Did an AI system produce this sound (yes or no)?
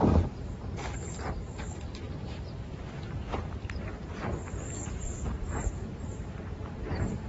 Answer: yes